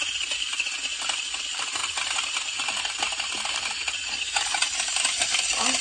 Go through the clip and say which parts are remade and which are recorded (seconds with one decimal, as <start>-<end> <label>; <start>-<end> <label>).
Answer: 0.0-5.8 recorded